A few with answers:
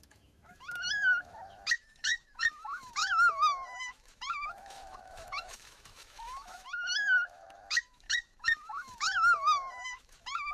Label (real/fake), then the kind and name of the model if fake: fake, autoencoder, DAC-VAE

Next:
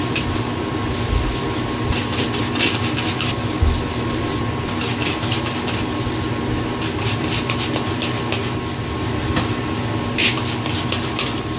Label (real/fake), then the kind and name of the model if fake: real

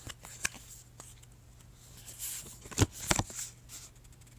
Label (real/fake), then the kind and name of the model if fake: real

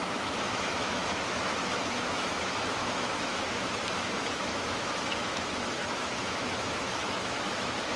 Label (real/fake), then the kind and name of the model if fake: fake, autoencoder, DAC-VAE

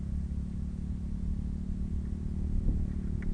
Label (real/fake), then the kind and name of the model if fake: real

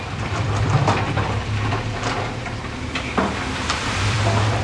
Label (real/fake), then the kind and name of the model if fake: fake, vocoder, BigVGAN v2